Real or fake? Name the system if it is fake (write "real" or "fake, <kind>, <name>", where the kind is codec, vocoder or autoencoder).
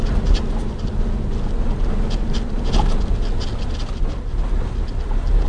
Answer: real